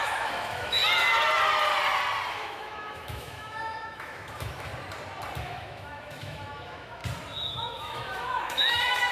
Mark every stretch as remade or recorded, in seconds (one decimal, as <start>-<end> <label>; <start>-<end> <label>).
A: 0.0-0.8 remade; 0.8-2.3 recorded; 2.3-4.7 remade; 4.7-5.4 recorded; 5.4-7.0 remade; 7.0-7.5 recorded; 7.5-9.1 remade